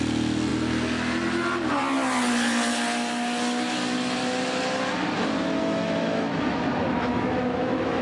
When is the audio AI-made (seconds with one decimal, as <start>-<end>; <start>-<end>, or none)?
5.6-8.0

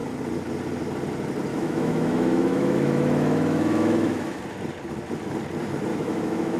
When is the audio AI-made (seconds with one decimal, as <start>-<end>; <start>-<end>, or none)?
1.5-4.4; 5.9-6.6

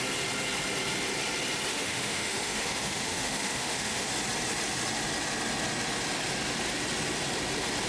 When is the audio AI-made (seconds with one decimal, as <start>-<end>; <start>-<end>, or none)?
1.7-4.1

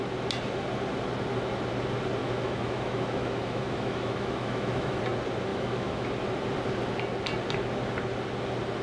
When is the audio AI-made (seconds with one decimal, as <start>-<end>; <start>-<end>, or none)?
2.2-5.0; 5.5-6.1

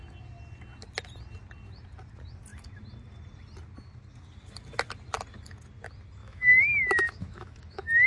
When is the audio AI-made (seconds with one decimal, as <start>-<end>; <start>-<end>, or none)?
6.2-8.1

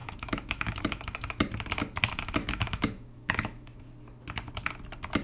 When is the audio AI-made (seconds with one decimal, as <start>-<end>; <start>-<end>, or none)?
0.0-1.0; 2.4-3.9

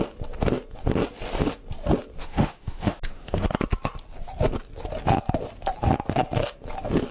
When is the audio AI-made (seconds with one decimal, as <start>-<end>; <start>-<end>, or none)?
2.2-3.4